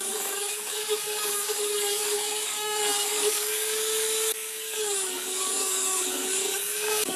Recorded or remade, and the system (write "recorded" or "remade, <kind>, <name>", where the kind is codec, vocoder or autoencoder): remade, codec, DAC